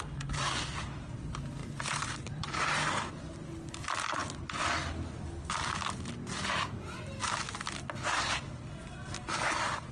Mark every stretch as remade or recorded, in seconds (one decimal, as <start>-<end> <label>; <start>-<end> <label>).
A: 0.0-1.6 recorded; 1.6-3.1 remade; 3.1-9.9 recorded